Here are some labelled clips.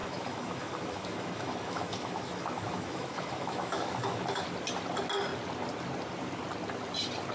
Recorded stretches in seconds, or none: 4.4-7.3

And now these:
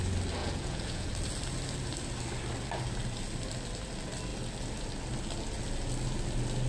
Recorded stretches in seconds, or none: 0.0-0.4; 1.1-6.7

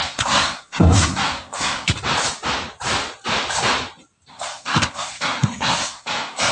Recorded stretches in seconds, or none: 1.9-4.3